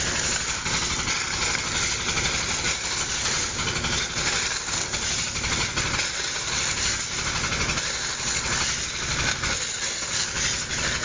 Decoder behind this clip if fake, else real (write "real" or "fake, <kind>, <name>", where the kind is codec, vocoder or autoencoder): real